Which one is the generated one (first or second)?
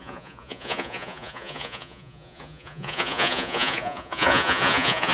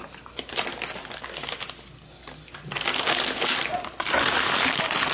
first